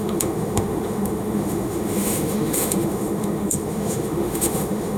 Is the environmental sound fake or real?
fake